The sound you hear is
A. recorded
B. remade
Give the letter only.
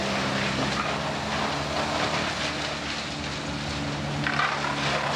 A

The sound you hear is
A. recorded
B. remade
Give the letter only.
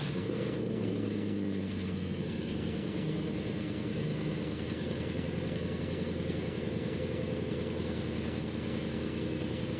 B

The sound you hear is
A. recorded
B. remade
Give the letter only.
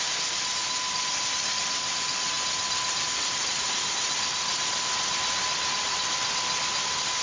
A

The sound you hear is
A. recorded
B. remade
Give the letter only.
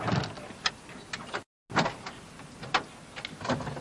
A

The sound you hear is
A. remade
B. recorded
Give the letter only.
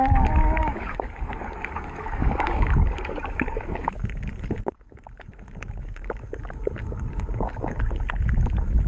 A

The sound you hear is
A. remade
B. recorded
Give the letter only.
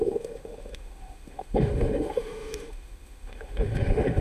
A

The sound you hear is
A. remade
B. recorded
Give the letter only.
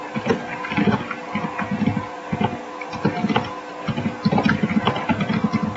B